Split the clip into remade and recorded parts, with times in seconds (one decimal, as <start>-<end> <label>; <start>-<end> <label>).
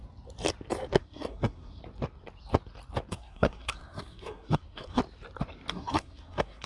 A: 0.0-1.0 recorded; 1.0-1.8 remade; 1.8-3.1 recorded; 3.1-5.0 remade; 5.0-5.7 recorded; 5.7-6.7 remade